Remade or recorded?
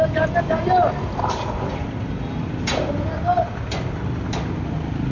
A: recorded